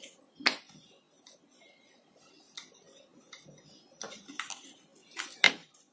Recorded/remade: recorded